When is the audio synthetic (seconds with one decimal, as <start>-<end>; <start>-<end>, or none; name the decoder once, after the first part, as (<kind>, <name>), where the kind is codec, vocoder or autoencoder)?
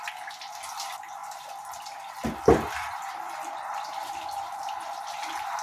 none